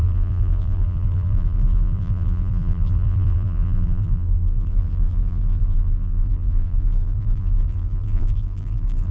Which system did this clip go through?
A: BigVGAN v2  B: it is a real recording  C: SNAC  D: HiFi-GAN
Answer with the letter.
A